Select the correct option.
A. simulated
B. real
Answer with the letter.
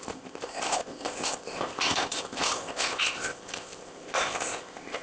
A